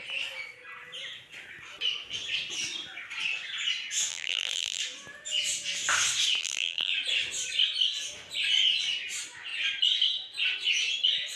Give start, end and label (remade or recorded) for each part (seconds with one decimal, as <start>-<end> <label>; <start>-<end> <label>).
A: 0.0-4.1 recorded; 4.1-4.8 remade; 4.8-6.4 recorded; 6.4-6.9 remade; 6.9-11.4 recorded